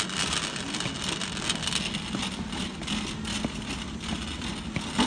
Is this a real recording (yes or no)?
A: yes